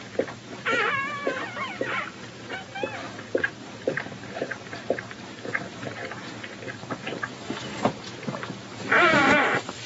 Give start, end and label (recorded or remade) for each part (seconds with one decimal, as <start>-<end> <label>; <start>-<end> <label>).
0.0-2.7 remade; 2.7-3.4 recorded; 3.4-9.2 remade; 9.2-9.9 recorded

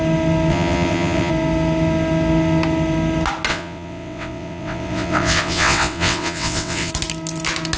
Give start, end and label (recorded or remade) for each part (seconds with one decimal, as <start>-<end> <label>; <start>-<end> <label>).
0.0-0.5 recorded; 0.5-1.3 remade; 1.3-3.5 recorded; 3.5-6.9 remade; 6.9-7.8 recorded

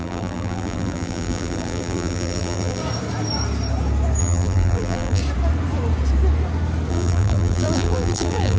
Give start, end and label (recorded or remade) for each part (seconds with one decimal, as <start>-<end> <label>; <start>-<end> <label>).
0.0-2.8 remade; 2.8-4.2 recorded; 4.2-5.2 remade; 5.2-6.9 recorded; 6.9-8.6 remade

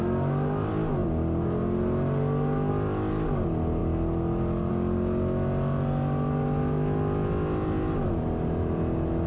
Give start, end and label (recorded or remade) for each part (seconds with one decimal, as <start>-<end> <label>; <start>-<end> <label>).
0.0-9.3 recorded